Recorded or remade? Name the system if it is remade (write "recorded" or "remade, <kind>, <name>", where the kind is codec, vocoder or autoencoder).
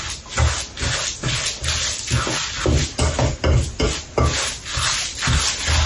recorded